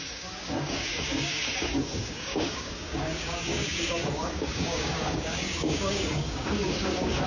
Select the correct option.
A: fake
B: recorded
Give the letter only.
A